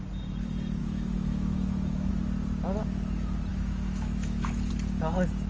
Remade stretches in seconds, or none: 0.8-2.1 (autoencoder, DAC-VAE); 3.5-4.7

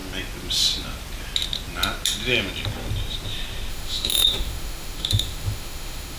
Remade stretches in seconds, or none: 3.7-6.2 (autoencoder, DAC-VAE)

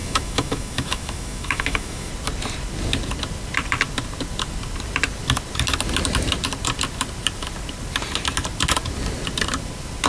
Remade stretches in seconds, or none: 0.0-2.1 (autoencoder, DAC-VAE)

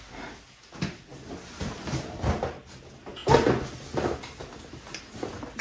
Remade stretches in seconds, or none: none

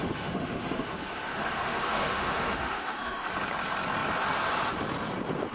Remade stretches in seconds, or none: 0.0-3.3 (autoencoder, DAC-VAE)

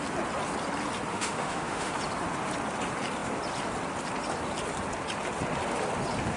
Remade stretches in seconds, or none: 1.1-1.9 (autoencoder, DAC-VAE)

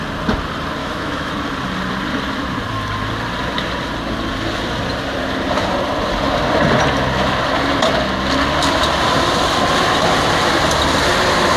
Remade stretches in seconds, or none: 0.8-1.3 (autoencoder, DAC-VAE)